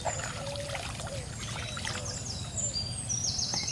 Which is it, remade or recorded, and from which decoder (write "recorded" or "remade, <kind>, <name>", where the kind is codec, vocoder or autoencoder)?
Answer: recorded